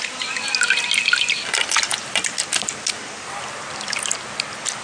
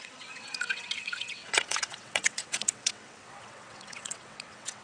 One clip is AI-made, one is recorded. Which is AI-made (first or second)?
second